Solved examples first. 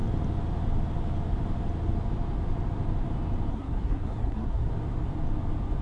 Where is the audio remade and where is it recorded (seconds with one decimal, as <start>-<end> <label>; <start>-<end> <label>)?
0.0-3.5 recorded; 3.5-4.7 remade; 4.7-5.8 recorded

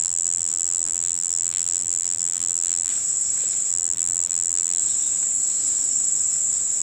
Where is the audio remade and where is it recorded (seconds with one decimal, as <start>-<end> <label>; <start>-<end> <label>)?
0.0-2.9 remade; 2.9-3.7 recorded; 3.7-4.8 remade; 4.8-6.8 recorded

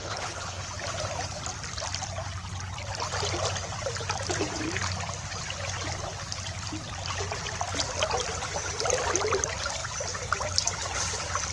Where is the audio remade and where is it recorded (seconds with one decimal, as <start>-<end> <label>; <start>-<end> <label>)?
0.0-0.6 remade; 0.6-11.5 recorded